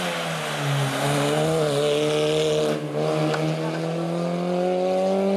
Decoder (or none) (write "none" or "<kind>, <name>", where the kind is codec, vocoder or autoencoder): none